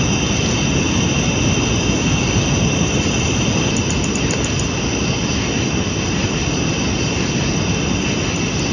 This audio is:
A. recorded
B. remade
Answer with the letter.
A